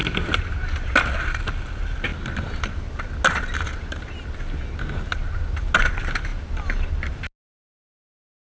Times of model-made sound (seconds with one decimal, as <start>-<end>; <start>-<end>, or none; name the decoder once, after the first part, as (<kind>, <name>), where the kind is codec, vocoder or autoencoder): none